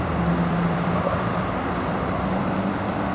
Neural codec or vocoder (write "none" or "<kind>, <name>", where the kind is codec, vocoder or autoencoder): vocoder, BigVGAN v2